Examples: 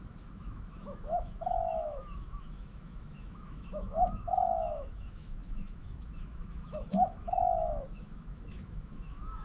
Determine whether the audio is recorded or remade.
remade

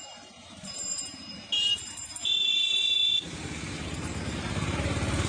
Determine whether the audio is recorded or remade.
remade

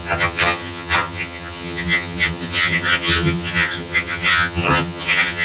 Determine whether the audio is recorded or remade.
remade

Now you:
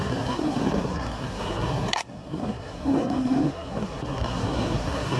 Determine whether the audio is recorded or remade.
remade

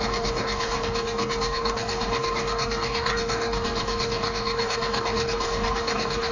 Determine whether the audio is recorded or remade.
remade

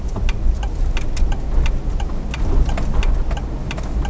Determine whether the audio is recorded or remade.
recorded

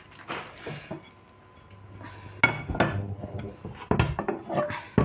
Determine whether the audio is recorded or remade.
recorded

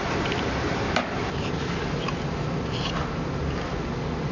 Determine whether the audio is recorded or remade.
recorded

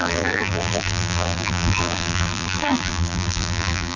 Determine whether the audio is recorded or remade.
remade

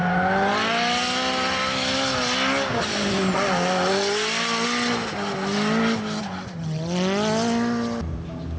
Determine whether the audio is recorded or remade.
recorded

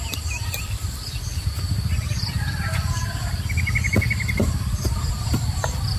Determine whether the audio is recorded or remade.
remade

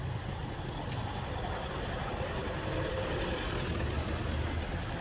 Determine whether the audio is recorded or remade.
recorded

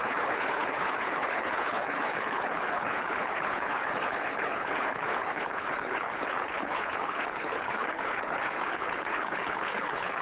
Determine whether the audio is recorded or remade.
remade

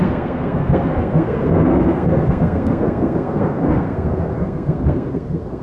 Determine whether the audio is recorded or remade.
remade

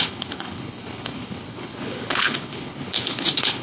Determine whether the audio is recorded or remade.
remade